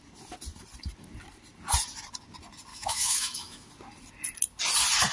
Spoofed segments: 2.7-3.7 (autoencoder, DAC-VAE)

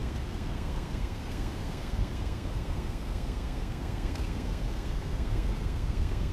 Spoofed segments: 0.0-6.3 (codec, SNAC)

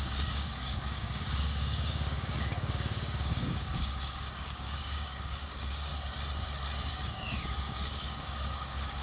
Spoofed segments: 0.0-5.9 (codec, DAC); 6.9-9.0

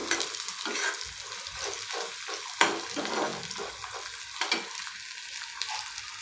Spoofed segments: none

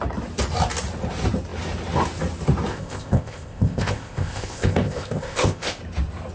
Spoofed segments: 2.7-5.8 (codec, ZipCodec)

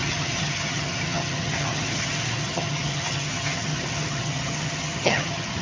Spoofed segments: 0.0-5.6 (vocoder, HiFi-GAN)